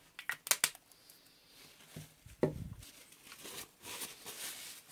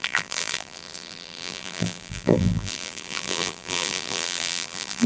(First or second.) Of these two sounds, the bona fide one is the first